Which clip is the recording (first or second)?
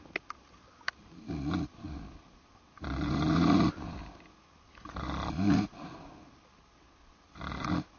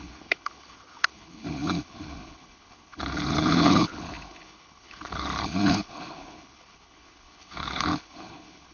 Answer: first